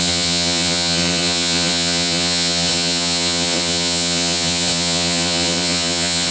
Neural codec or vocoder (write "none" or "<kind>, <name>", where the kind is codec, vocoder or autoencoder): vocoder, Vocos